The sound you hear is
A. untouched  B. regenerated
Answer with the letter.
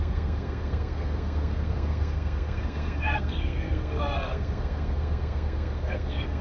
B